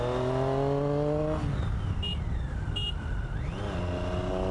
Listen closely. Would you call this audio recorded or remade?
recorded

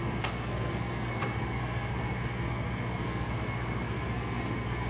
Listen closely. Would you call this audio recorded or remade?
remade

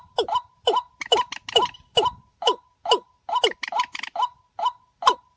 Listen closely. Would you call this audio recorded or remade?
recorded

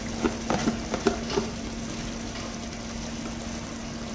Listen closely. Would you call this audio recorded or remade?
recorded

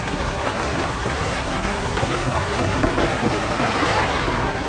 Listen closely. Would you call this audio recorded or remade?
remade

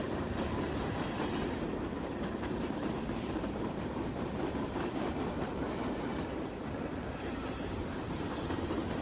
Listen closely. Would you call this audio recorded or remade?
remade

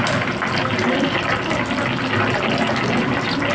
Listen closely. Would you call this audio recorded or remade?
recorded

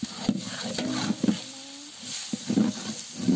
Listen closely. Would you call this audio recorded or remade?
recorded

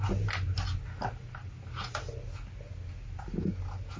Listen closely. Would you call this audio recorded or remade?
recorded